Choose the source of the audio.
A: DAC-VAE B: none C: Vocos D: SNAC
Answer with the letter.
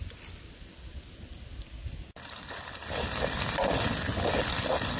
B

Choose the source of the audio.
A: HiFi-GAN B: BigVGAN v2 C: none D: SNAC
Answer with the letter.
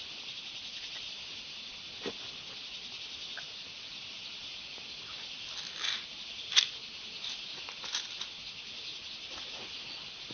C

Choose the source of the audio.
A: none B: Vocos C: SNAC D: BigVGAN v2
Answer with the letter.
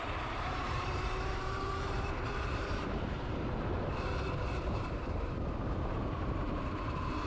D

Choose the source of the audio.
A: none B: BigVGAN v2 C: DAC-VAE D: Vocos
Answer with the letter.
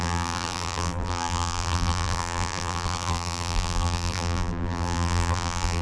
B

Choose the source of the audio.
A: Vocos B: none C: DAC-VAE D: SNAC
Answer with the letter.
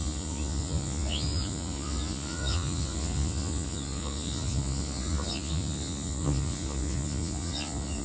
A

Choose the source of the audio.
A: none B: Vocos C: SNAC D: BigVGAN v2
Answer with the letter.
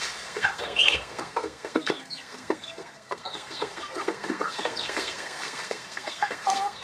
C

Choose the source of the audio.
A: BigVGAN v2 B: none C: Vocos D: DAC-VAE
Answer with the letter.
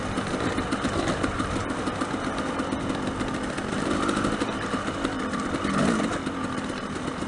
B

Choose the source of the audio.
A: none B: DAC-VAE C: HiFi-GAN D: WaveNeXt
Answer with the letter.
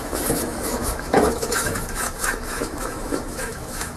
B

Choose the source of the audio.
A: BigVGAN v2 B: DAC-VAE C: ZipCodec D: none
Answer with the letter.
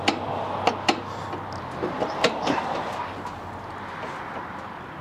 D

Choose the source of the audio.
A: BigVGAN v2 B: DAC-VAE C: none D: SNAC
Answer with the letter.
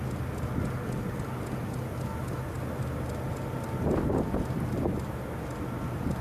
C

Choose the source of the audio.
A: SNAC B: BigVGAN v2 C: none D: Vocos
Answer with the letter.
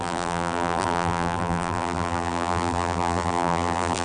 B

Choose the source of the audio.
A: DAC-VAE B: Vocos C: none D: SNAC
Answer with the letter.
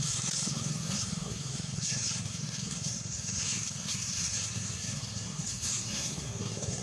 D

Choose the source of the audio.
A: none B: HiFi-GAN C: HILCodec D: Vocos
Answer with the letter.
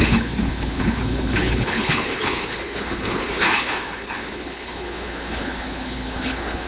C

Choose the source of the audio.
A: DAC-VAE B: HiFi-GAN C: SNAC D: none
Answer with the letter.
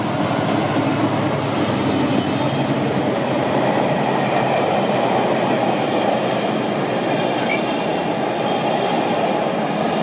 D